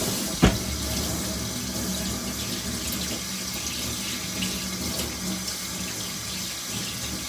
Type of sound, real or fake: real